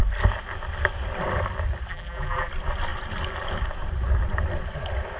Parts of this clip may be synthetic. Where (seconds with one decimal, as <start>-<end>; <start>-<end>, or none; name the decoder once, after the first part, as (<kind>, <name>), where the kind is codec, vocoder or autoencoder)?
1.9-2.5 (vocoder, BigVGAN v2)